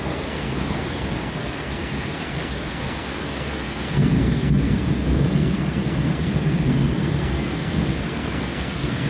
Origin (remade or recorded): remade